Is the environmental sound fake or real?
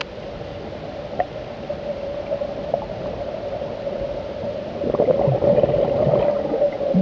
real